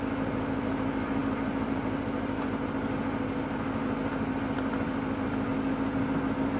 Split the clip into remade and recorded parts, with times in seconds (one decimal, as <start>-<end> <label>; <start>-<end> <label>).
0.0-6.6 recorded